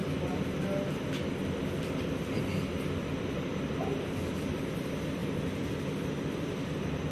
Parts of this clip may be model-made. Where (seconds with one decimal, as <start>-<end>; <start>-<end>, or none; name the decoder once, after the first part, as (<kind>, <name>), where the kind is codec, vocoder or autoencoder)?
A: 4.3-7.1 (vocoder, BigVGAN v2)